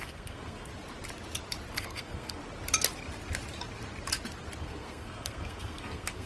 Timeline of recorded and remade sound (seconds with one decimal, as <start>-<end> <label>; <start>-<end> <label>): 0.0-0.7 remade; 0.7-1.7 recorded; 1.7-2.4 remade; 2.4-4.6 recorded; 4.6-6.3 remade